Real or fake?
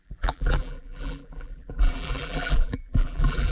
fake